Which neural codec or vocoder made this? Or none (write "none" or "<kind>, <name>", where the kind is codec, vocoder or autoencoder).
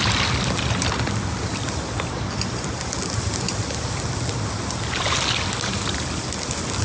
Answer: none